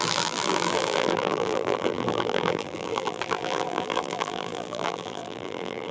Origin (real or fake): fake